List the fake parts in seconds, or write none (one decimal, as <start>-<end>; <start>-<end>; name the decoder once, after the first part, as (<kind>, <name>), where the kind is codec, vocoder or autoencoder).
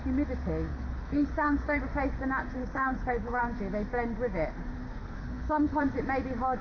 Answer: 0.7-1.8 (codec, HILCodec); 2.6-3.4; 5.0-5.8